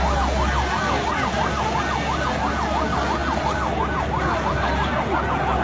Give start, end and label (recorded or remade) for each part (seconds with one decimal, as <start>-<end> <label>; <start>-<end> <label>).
0.0-5.6 recorded